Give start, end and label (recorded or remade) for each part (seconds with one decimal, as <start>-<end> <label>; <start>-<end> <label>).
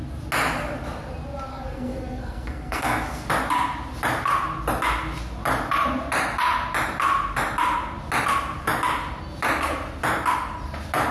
0.0-1.5 recorded; 1.5-3.3 remade; 3.3-11.1 recorded